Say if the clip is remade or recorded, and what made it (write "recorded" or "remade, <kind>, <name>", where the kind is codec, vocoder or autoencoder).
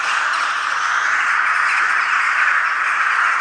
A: recorded